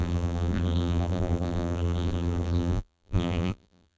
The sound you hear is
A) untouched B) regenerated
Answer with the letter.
B